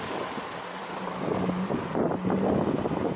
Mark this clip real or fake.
real